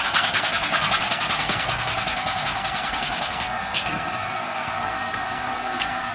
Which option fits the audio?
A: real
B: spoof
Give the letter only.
B